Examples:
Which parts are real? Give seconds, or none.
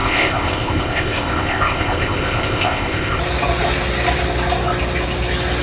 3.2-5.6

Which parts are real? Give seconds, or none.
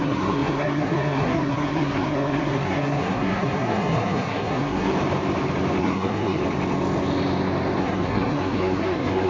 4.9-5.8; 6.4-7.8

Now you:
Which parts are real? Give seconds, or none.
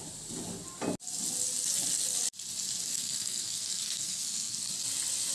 0.0-2.9; 4.7-5.3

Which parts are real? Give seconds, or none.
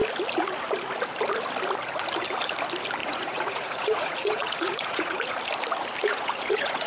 0.0-3.0; 5.4-6.0